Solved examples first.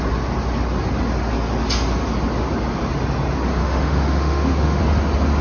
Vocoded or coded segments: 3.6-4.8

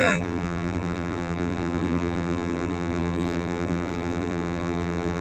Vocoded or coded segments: 0.0-5.2

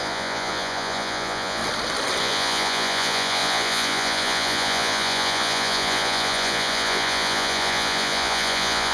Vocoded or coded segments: 0.0-1.6; 2.2-8.9

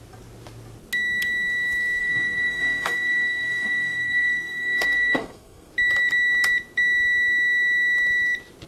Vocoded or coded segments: 2.0-5.7

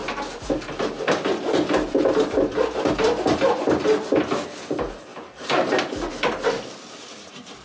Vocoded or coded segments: none

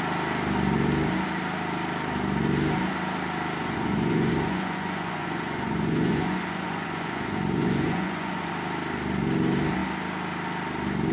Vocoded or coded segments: 3.6-8.5

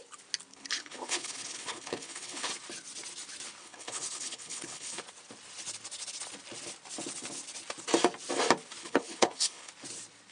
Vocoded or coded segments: 0.5-2.5; 3.6-5.0; 8.8-9.7

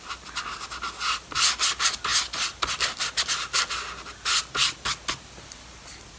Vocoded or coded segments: none